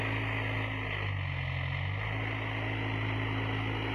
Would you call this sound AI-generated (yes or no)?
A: no